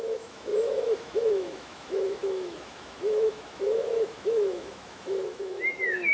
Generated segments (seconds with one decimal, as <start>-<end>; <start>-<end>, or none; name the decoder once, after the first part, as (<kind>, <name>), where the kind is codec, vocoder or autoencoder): 0.0-6.1 (autoencoder, DAC-VAE)